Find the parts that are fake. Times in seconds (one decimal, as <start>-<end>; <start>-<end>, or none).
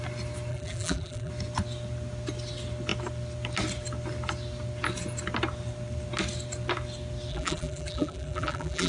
0.5-1.3; 7.3-8.9